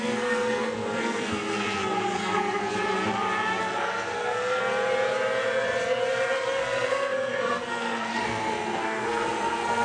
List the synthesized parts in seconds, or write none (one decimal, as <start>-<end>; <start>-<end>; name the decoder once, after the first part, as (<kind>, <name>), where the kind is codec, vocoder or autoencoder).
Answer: 0.0-2.6 (codec, SNAC); 3.6-4.6; 6.3-9.8